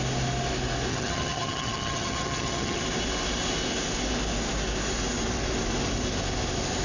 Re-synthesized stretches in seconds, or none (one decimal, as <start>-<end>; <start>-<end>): 0.9-2.8